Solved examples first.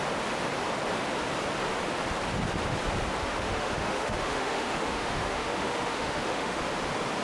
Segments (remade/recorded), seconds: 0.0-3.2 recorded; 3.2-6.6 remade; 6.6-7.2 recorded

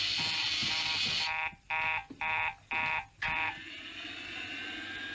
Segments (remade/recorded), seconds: 0.0-5.1 recorded